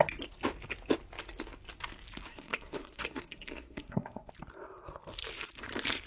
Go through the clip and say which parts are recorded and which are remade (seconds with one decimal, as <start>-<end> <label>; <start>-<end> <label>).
0.0-2.3 recorded; 2.3-4.3 remade; 4.3-6.1 recorded